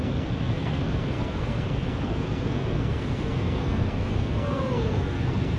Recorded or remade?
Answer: remade